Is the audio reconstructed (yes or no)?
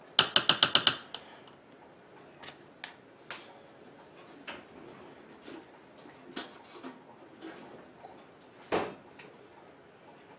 no